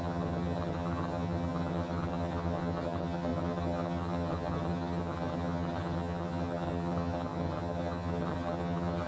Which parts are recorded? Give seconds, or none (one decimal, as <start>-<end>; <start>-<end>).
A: none